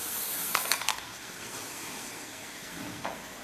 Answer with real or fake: fake